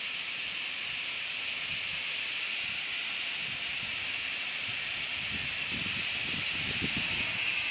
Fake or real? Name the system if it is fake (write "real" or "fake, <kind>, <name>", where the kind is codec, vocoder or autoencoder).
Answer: real